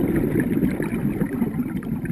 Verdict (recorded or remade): recorded